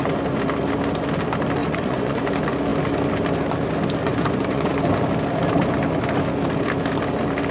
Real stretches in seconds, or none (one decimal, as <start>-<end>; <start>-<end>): 0.0-1.6; 2.2-4.0; 4.8-7.5

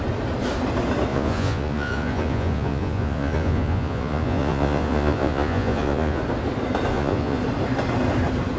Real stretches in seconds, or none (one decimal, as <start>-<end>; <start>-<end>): 0.0-1.1; 6.2-6.9; 7.4-8.6